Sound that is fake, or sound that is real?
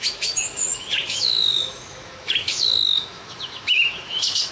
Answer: fake